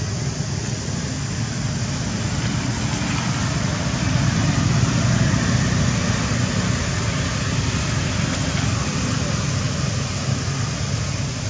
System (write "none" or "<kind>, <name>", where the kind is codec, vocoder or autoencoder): none